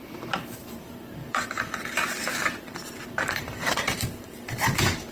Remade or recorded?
remade